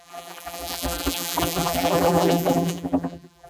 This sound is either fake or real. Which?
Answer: fake